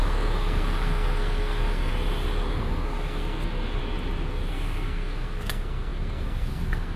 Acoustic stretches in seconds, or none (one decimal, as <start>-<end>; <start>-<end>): 1.9-2.5; 3.8-4.5